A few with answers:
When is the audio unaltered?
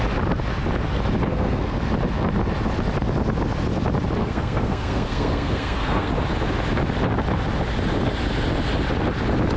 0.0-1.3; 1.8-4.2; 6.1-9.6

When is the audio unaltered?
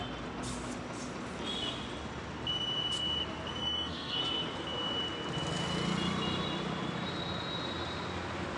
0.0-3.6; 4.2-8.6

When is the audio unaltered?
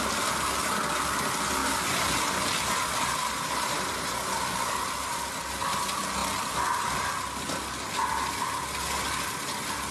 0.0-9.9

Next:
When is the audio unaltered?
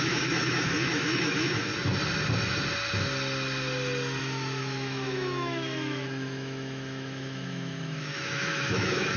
1.7-4.2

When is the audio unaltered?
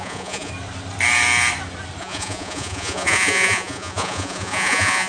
0.5-2.0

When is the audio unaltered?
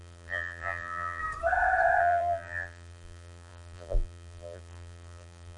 1.2-2.0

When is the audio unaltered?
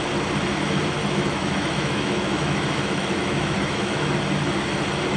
0.0-1.0; 4.1-5.2